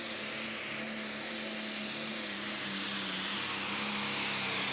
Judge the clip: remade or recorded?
recorded